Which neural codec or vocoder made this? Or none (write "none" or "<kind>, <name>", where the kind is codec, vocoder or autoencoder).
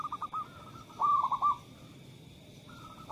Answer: none